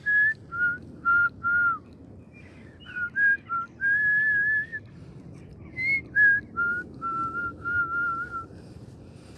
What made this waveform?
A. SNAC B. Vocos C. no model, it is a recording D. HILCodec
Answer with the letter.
C